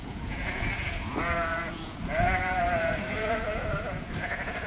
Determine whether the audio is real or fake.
fake